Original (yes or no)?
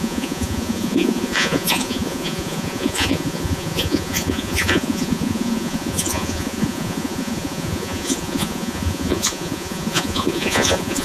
no